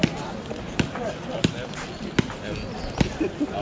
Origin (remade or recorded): recorded